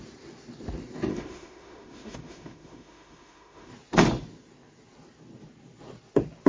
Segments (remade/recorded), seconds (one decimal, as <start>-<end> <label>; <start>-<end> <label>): 0.0-1.1 recorded; 1.1-3.7 remade; 3.7-6.5 recorded

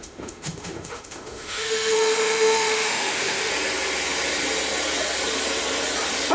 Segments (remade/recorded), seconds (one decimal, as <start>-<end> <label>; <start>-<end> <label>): 0.0-3.5 remade; 3.5-6.3 recorded

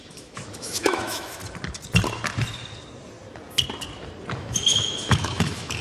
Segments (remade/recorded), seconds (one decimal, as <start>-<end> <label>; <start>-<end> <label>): 0.0-1.4 remade; 1.4-4.4 recorded; 4.4-5.8 remade

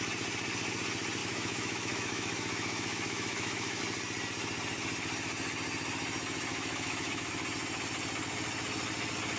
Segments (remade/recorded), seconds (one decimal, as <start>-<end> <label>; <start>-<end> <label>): 0.0-1.2 recorded; 1.2-3.8 remade; 3.8-6.5 recorded; 6.5-7.3 remade; 7.3-9.4 recorded

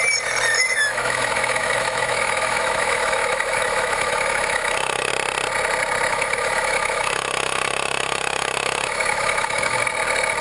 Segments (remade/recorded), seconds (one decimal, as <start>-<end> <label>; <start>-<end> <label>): 0.0-0.6 recorded; 0.6-5.1 remade; 5.1-6.1 recorded; 6.1-9.8 remade; 9.8-10.4 recorded

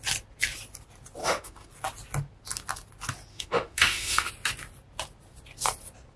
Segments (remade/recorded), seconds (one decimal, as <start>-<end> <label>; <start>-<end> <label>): 0.0-1.2 recorded; 1.2-1.7 remade; 1.7-3.3 recorded; 3.3-4.3 remade; 4.3-6.2 recorded

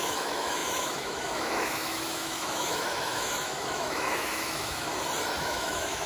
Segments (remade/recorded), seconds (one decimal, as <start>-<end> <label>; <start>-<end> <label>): 0.0-4.9 remade; 4.9-5.4 recorded; 5.4-6.1 remade